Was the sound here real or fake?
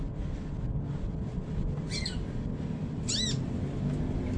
real